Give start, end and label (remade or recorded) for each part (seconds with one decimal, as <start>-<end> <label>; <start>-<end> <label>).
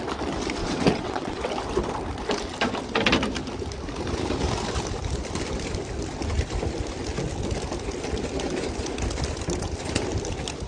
0.0-0.6 recorded; 0.6-1.4 remade; 1.4-10.7 recorded